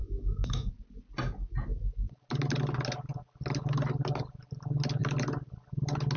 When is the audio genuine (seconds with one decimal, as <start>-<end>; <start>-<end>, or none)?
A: 0.7-6.2